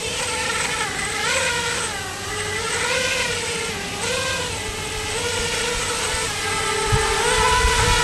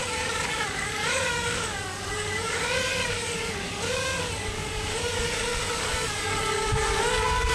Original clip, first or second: first